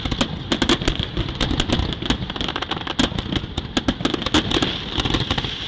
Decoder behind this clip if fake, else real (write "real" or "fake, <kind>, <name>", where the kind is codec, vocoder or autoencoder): real